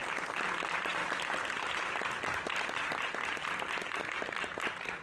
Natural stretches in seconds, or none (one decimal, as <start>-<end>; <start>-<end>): 0.0-0.6; 1.0-4.0